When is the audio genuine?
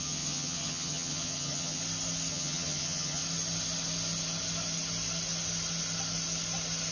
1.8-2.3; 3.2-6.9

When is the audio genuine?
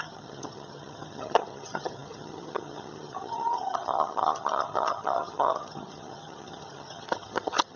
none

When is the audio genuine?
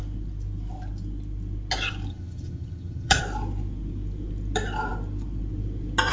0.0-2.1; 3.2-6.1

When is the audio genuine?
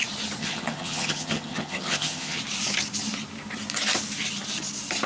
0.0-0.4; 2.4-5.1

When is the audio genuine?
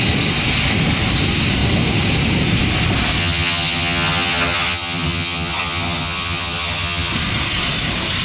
0.0-3.2; 7.1-8.2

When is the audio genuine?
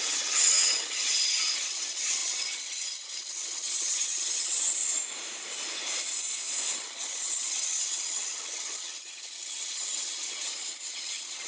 4.8-6.7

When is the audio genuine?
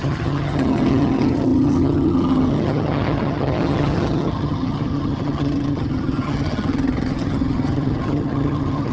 none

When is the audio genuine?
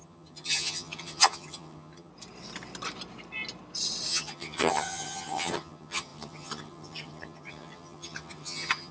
2.1-4.1